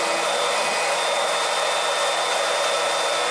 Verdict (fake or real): real